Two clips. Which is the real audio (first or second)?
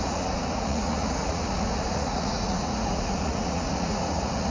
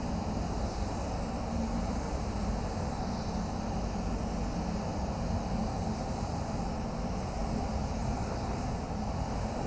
second